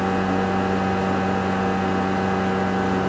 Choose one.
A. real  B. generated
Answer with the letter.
A